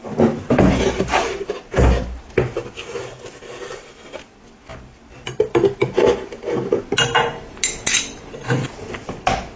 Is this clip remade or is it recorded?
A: recorded